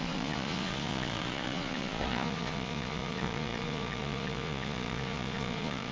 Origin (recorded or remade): remade